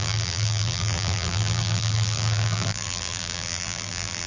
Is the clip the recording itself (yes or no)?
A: no